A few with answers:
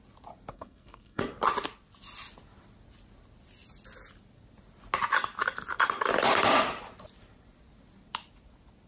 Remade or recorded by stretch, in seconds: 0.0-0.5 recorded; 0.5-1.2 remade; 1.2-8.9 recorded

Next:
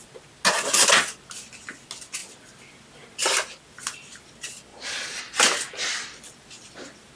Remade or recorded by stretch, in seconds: 0.0-4.7 recorded; 4.7-5.2 remade; 5.2-7.2 recorded

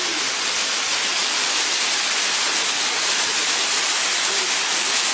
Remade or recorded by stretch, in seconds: 0.0-5.1 recorded

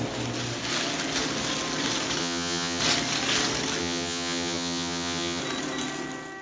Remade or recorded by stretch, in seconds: 0.0-2.2 recorded; 2.2-2.8 remade; 2.8-3.8 recorded; 3.8-5.4 remade; 5.4-6.4 recorded

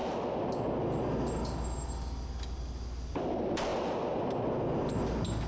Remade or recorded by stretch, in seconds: 0.0-5.5 recorded